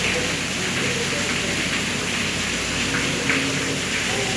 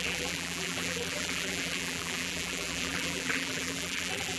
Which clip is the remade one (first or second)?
second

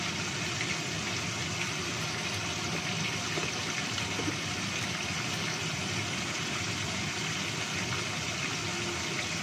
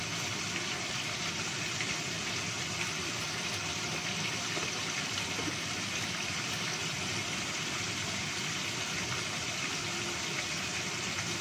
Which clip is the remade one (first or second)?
second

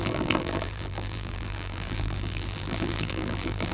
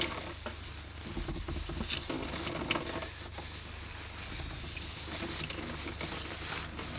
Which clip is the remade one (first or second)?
first